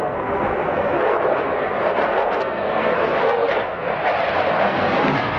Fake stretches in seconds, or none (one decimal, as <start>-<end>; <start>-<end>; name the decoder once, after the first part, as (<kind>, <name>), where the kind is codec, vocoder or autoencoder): 0.0-3.9 (codec, SNAC); 4.6-5.4